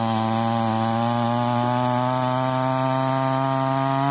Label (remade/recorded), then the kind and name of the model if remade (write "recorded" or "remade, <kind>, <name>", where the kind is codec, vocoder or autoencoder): recorded